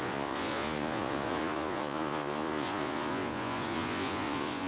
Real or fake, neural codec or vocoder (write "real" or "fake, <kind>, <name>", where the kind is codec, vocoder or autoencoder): fake, vocoder, Vocos